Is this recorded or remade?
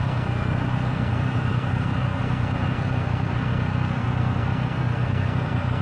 remade